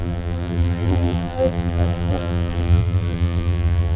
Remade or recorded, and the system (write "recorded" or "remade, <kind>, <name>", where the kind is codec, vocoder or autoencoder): remade, vocoder, BigVGAN v2